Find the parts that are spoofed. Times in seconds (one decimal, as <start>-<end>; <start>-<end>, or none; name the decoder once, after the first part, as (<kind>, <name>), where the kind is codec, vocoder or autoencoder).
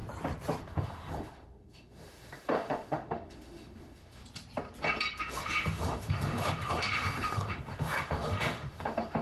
0.6-4.2 (autoencoder, DAC-VAE); 5.2-9.2